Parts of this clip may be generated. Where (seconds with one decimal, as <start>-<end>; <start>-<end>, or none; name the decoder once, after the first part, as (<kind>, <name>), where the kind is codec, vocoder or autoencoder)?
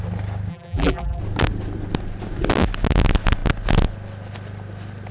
0.5-1.2 (vocoder, BigVGAN v2)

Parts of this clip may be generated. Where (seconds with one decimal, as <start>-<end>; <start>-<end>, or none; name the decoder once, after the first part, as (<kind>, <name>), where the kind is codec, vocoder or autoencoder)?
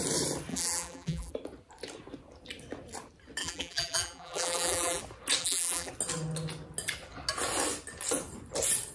0.5-1.3 (vocoder, BigVGAN v2); 3.4-5.0; 5.4-5.9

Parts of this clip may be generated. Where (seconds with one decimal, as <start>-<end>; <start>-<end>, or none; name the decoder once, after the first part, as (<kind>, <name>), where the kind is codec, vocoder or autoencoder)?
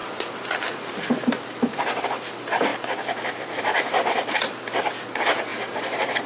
0.0-2.7 (vocoder, BigVGAN v2); 3.6-6.3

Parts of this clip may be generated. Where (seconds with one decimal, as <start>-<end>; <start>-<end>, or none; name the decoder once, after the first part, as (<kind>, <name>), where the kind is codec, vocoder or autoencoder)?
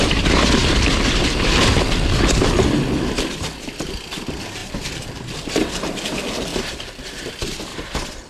4.6-5.7 (vocoder, BigVGAN v2); 6.5-7.3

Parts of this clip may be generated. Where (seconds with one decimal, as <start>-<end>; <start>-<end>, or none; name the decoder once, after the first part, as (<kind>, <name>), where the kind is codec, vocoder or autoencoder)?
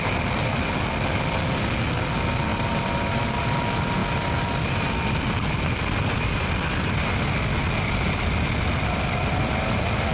2.5-3.2 (vocoder, BigVGAN v2)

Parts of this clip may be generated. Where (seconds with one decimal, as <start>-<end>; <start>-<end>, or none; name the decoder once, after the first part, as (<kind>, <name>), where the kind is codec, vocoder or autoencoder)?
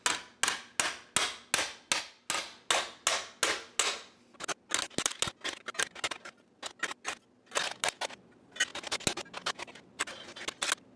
none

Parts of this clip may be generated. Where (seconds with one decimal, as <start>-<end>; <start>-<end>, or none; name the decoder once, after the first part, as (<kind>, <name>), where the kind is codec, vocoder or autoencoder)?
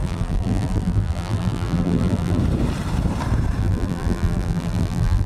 0.0-2.4 (vocoder, BigVGAN v2); 3.6-5.3